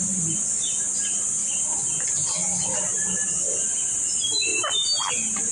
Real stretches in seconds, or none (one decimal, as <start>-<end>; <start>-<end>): 0.0-5.5